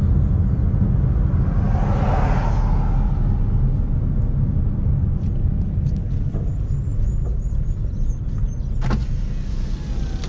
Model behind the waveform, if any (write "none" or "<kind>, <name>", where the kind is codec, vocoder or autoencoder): none